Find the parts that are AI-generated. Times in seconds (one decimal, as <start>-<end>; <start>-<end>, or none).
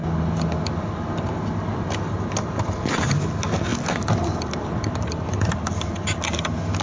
3.7-5.5